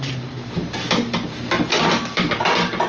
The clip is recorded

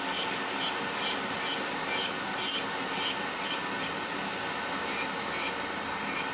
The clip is recorded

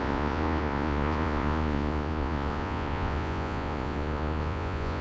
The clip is remade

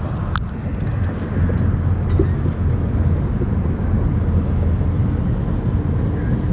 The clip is recorded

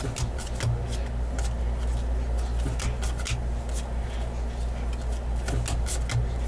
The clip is recorded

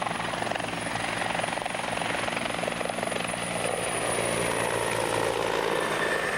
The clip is recorded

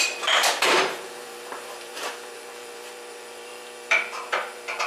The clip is remade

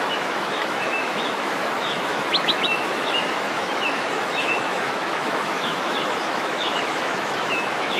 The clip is remade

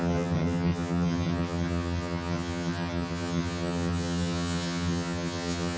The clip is remade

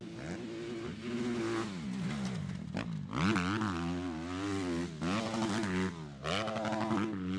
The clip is recorded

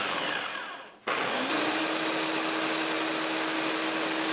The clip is recorded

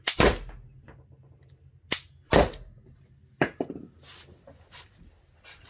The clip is recorded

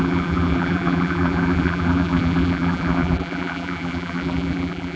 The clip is remade